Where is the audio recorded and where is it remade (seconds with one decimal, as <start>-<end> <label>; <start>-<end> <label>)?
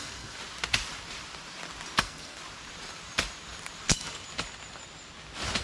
0.0-0.4 remade; 0.4-2.0 recorded; 2.0-2.4 remade; 2.4-5.6 recorded